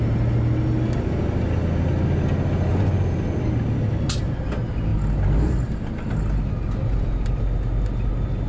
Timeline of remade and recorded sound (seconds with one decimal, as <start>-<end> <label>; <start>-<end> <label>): 0.0-8.5 recorded